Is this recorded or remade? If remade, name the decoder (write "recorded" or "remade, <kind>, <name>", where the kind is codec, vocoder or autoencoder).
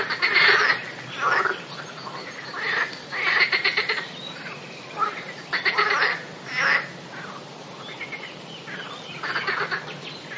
recorded